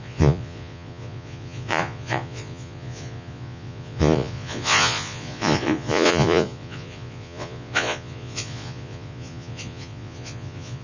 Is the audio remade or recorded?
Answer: remade